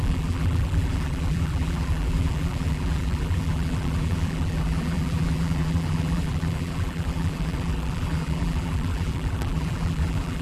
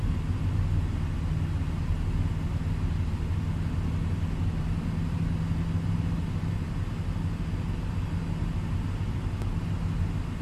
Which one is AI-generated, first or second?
first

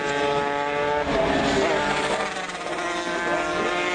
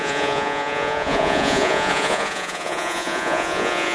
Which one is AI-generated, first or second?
second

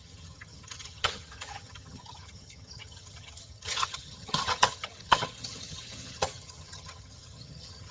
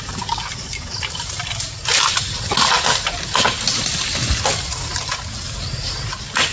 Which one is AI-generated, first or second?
first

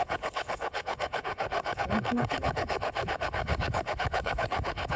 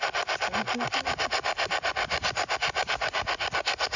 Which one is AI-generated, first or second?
first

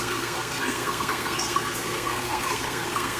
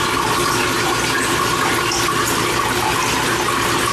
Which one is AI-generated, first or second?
first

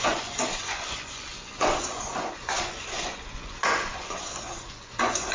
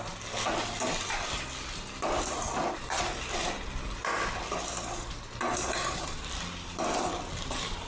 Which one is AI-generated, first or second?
first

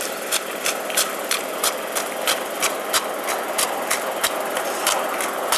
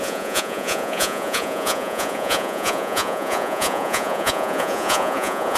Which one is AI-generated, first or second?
second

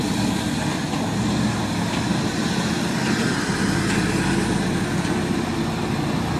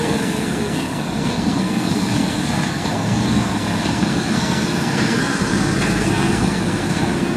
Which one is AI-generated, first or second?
second